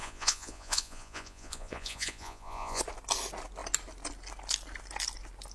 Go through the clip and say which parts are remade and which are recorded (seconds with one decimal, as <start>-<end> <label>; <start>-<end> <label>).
0.0-2.8 remade; 2.8-5.5 recorded